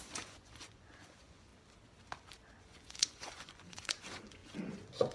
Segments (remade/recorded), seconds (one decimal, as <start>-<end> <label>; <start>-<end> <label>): 0.0-1.5 remade; 1.5-2.6 recorded; 2.6-5.1 remade